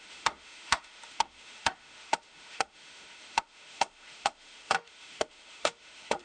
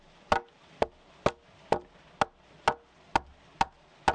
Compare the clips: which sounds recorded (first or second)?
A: second